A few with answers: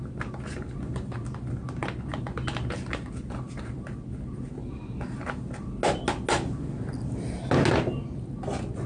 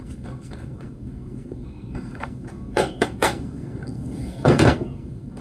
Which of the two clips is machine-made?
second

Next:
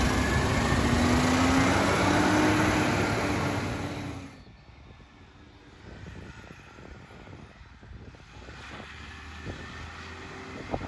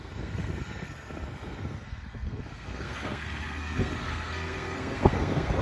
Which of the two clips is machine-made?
second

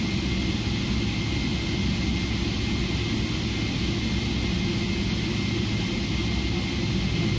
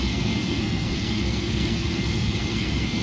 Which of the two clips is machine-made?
second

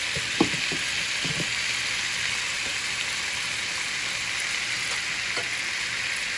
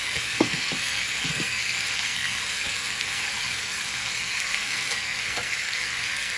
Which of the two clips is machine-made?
second